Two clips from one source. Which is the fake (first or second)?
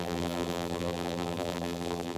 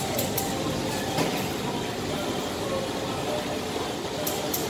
first